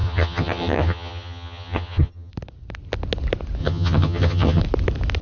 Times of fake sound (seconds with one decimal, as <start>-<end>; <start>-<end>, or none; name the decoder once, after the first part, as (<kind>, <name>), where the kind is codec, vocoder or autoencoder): 0.0-2.3 (vocoder, HiFi-GAN); 3.6-4.6